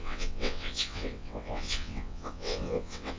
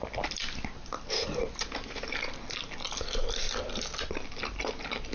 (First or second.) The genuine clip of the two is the second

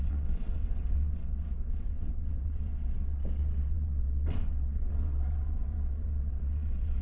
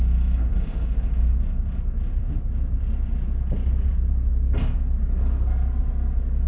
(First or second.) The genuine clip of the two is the second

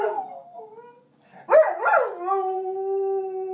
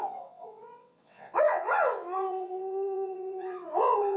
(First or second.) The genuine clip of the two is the first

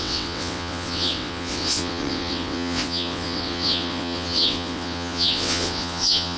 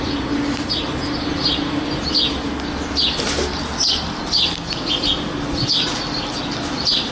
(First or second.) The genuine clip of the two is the second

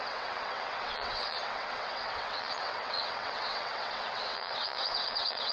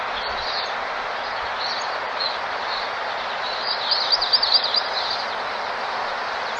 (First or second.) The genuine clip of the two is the second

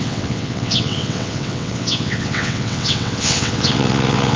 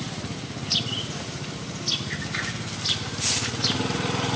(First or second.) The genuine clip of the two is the second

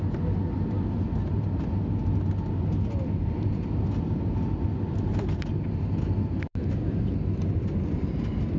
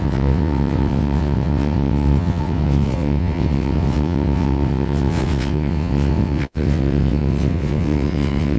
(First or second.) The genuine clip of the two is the first